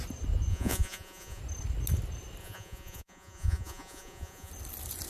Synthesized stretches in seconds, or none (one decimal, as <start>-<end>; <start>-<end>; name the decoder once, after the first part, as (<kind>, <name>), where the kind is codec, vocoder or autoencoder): 0.5-1.4 (vocoder, Vocos); 2.4-4.5